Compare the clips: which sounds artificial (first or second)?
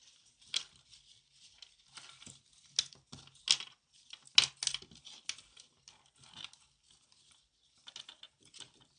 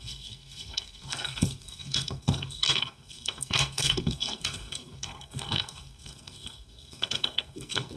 second